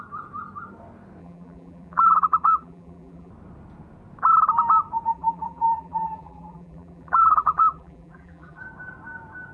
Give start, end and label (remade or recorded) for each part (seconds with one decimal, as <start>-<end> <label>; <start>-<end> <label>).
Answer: 0.0-1.2 recorded; 1.2-3.3 remade; 3.3-5.1 recorded; 5.1-8.6 remade; 8.6-9.5 recorded